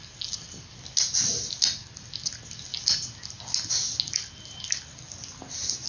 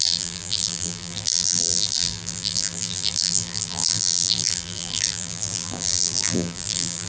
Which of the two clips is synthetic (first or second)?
second